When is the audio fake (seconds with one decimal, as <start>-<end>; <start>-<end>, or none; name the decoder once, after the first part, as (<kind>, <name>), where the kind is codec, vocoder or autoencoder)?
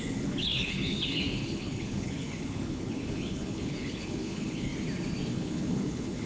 0.0-4.7 (codec, HILCodec); 5.3-6.3